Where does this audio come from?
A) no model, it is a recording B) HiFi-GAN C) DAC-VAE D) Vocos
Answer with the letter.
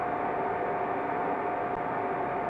A